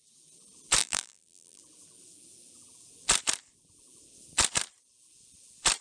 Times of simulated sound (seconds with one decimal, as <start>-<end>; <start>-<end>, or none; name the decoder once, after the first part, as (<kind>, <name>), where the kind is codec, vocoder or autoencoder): 0.8-1.6 (vocoder, BigVGAN v2)